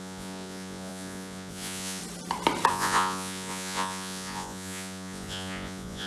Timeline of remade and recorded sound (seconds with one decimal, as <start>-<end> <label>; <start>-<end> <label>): 0.0-2.0 remade; 2.0-2.7 recorded; 2.7-6.1 remade